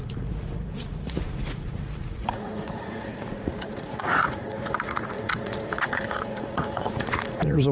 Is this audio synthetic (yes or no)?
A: yes